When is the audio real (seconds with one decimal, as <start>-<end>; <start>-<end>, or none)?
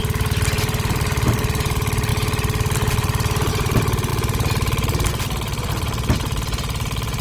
0.0-7.2